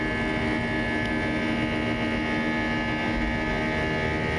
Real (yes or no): yes